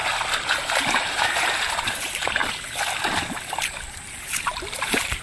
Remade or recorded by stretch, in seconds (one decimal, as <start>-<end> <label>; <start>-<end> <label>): 0.0-0.6 recorded; 0.6-2.4 remade; 2.4-3.7 recorded; 3.7-5.2 remade